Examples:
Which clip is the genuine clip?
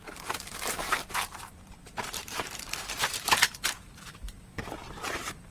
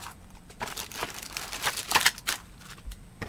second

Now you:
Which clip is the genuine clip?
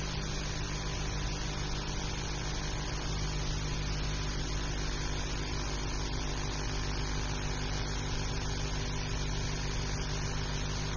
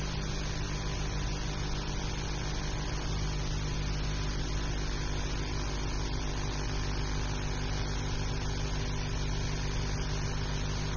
second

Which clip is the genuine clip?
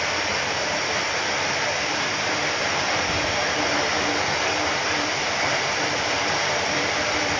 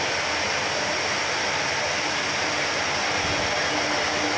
second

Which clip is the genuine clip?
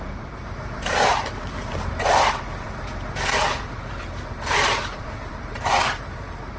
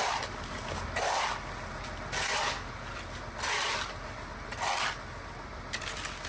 second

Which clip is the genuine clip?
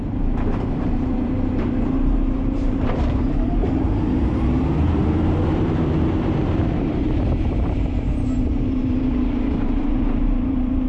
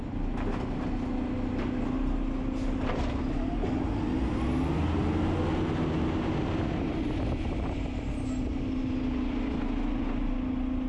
second